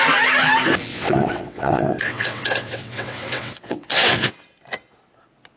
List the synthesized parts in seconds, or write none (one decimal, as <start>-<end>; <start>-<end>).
0.9-4.3